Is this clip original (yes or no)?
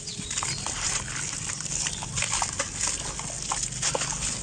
yes